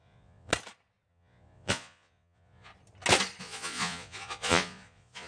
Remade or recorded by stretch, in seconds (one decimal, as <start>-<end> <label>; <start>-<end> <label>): 0.0-0.5 remade; 0.5-1.1 recorded; 1.1-2.7 remade; 2.7-3.4 recorded; 3.4-5.3 remade